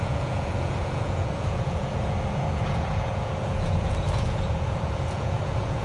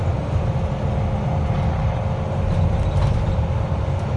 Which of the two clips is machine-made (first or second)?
first